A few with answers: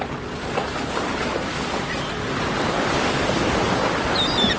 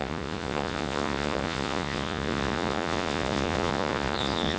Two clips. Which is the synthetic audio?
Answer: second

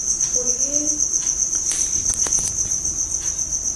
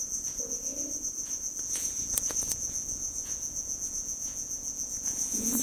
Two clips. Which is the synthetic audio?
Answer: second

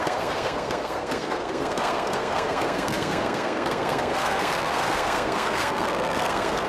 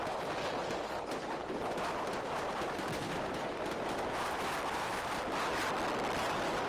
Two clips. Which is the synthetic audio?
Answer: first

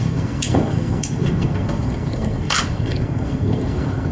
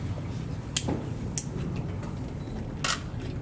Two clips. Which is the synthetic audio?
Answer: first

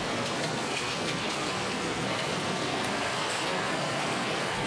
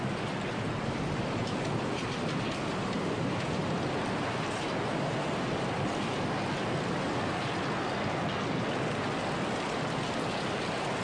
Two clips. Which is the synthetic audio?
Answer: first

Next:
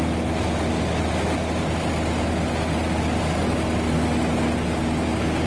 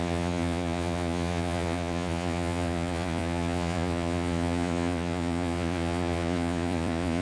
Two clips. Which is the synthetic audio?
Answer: second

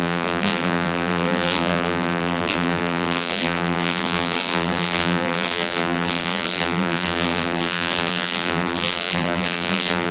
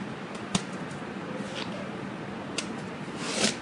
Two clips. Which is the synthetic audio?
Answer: first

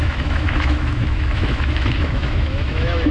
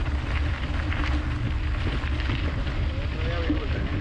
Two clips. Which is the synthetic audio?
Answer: first